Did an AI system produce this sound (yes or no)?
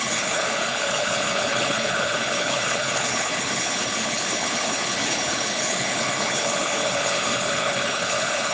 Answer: yes